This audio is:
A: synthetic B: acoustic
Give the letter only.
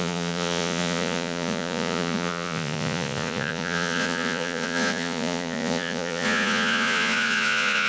A